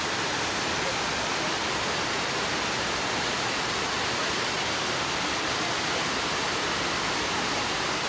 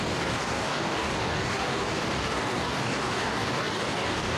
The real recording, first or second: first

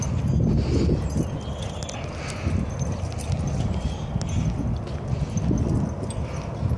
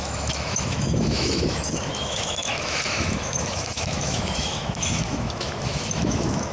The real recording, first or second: first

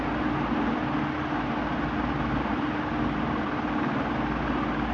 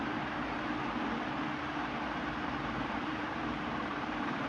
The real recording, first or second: first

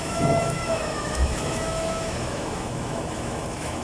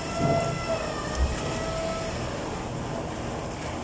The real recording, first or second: second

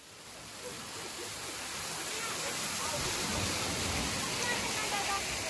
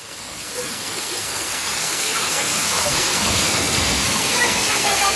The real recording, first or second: first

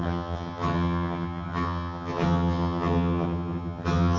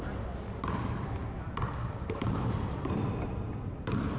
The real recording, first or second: second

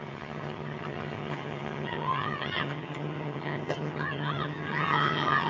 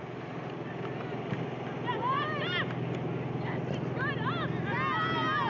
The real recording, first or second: second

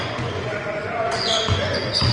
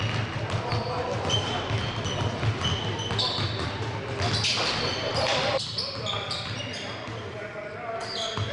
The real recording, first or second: second